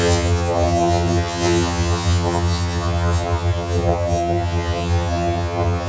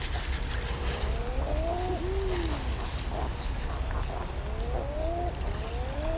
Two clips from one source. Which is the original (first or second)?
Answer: second